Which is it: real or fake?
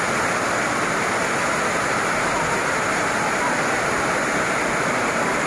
real